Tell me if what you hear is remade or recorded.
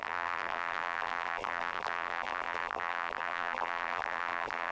remade